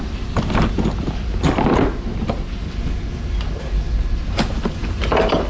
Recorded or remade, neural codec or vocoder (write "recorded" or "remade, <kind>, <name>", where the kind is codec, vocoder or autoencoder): recorded